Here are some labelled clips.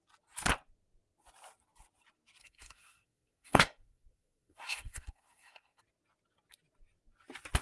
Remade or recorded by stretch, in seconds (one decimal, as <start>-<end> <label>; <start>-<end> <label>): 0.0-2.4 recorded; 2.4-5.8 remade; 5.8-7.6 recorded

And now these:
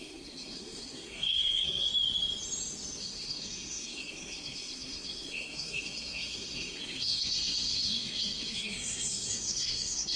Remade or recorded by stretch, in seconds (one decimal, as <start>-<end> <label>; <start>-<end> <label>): 0.0-1.9 remade; 1.9-3.0 recorded; 3.0-10.2 remade

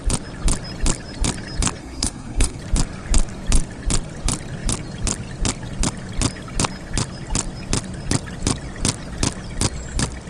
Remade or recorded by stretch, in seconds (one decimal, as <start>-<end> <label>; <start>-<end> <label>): 0.0-1.8 recorded; 1.8-2.6 remade; 2.6-10.3 recorded